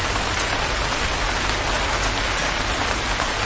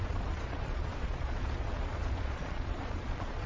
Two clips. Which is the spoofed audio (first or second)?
second